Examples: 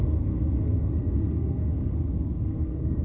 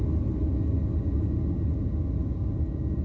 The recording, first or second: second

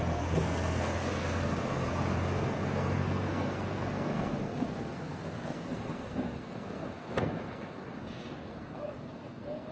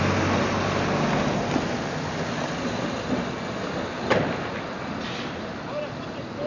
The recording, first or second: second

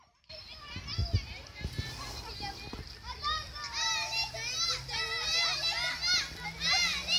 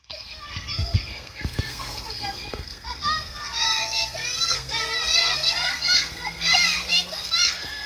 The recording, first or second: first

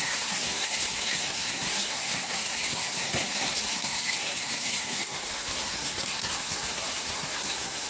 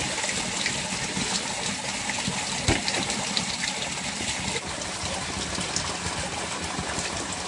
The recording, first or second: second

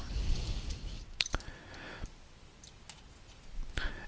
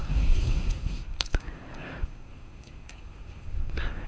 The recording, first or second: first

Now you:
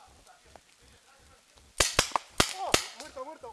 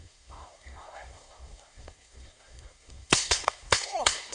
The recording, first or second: first